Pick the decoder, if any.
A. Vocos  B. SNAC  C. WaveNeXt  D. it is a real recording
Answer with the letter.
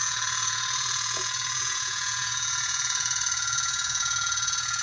A